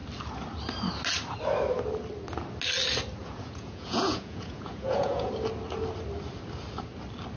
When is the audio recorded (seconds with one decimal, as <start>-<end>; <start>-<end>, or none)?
0.0-3.2; 5.3-7.4